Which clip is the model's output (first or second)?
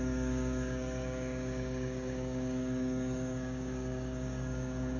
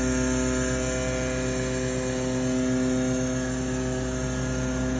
first